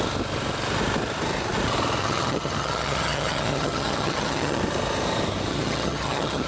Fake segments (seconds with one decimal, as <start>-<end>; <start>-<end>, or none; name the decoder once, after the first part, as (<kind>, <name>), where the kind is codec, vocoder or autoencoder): 2.0-4.6 (vocoder, HiFi-GAN); 5.5-6.5